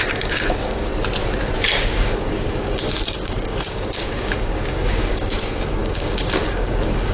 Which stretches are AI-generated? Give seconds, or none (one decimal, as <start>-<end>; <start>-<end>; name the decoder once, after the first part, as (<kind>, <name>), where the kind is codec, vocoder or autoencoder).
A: 0.0-0.9 (codec, DAC); 1.7-7.1